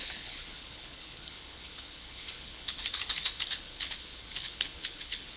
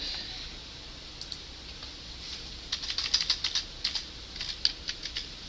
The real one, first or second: second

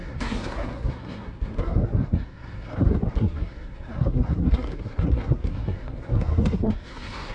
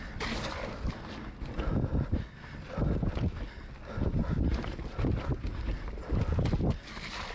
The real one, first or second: second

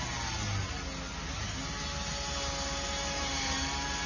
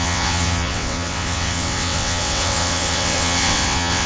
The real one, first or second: first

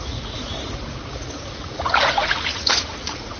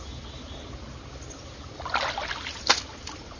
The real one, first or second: second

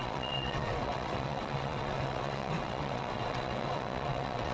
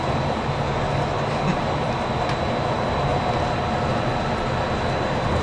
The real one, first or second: second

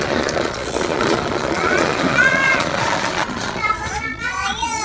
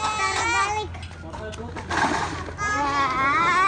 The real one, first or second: second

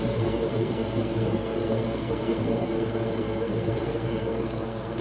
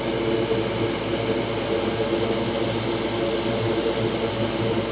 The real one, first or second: second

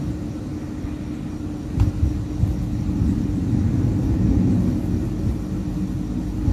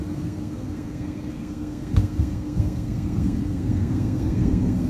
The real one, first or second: first